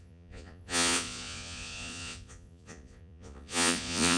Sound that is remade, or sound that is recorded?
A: remade